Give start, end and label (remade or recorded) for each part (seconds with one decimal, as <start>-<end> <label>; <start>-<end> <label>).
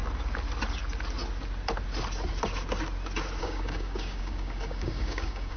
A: 0.0-3.4 recorded; 3.4-5.6 remade